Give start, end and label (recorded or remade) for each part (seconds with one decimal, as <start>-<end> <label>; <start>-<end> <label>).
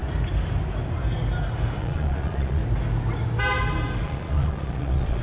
0.0-1.8 recorded; 1.8-2.6 remade; 2.6-4.0 recorded; 4.0-5.2 remade